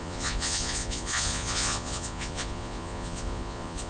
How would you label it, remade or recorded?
remade